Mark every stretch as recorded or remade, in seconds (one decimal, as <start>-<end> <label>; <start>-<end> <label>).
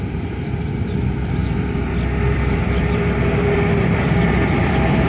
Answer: 0.0-5.1 remade